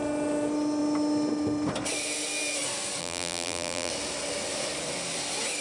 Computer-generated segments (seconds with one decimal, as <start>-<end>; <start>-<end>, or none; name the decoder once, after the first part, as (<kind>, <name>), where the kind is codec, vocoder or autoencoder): 3.0-3.9 (vocoder, BigVGAN v2)